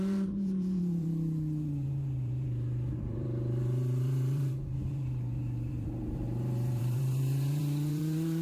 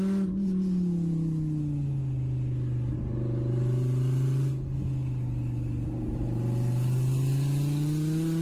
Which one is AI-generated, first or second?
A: first